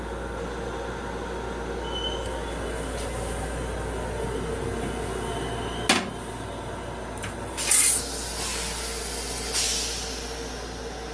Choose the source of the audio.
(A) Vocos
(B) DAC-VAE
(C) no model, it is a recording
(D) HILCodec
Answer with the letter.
C